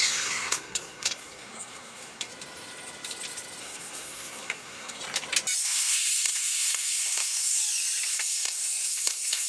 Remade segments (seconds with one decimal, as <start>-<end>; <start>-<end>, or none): 0.0-2.3; 3.6-5.0; 5.6-7.6; 8.1-9.5